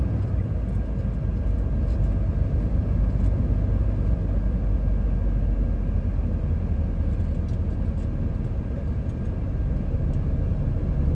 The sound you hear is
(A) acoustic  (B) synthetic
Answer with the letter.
A